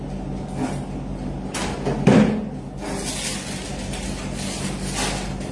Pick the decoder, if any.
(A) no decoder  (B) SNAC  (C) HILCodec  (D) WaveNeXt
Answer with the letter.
A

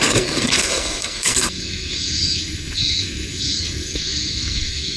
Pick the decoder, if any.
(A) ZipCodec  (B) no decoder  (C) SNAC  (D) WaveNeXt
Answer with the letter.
C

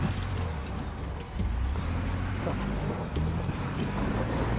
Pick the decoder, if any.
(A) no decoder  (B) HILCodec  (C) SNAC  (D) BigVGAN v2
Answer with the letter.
D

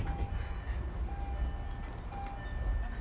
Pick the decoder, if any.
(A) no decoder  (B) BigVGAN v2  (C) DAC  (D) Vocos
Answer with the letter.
A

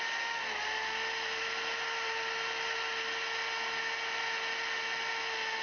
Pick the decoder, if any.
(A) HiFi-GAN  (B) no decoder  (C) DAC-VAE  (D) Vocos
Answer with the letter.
B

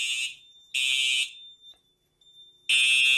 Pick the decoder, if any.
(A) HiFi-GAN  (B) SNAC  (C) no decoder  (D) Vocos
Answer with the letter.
C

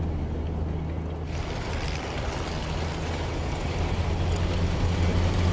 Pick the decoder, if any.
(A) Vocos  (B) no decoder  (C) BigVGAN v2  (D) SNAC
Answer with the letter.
B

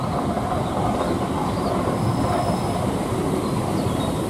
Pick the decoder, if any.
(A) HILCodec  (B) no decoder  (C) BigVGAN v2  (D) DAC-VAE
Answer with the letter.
B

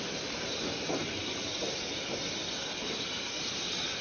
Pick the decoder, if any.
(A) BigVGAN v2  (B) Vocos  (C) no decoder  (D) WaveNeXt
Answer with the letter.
C